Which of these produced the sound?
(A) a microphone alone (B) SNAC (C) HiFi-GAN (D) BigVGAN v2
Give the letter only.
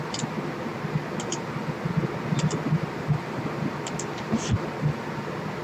A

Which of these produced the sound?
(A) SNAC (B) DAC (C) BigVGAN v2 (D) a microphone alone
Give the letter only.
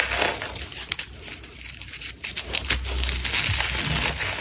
D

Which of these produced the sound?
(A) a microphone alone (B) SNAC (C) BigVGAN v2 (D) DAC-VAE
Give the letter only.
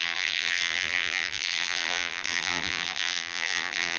C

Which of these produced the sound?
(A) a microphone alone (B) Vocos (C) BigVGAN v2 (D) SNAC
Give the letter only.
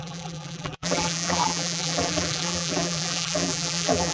C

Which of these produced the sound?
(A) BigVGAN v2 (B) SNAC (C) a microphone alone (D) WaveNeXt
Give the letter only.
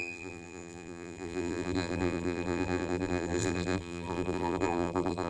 A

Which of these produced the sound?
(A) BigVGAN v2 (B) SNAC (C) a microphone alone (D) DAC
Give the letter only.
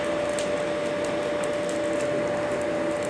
C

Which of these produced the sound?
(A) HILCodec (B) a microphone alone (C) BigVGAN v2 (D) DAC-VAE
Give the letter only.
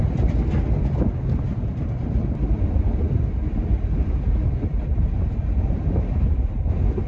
B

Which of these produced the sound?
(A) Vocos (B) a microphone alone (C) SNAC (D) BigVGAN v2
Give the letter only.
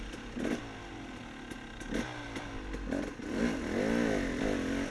B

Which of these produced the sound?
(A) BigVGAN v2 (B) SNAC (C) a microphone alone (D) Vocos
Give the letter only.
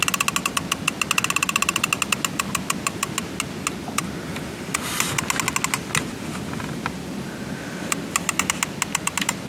C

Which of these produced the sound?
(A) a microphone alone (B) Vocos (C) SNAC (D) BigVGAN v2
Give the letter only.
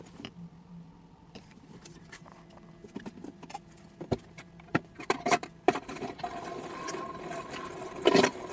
D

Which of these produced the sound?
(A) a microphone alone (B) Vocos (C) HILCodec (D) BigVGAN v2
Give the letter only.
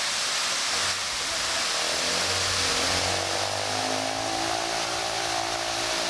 A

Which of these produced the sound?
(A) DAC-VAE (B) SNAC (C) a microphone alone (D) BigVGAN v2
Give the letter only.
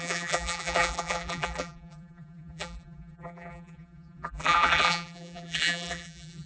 D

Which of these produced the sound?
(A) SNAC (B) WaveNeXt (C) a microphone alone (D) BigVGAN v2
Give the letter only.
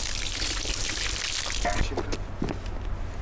C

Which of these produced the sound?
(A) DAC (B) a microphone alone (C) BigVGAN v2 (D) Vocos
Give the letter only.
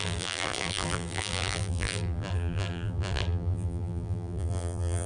C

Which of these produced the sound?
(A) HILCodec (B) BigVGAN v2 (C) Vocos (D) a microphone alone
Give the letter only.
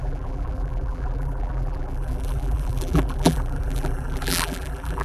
B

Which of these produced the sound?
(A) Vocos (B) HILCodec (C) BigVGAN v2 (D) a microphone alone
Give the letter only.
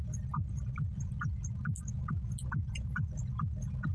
D